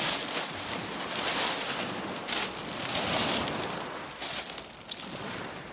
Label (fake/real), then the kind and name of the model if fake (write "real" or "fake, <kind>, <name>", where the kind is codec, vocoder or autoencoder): real